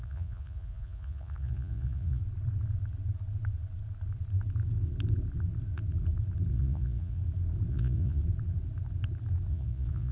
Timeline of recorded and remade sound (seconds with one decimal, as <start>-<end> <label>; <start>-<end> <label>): 0.0-2.2 remade; 2.2-6.5 recorded; 6.5-7.2 remade; 7.2-7.7 recorded; 7.7-8.2 remade; 8.2-9.5 recorded; 9.5-10.1 remade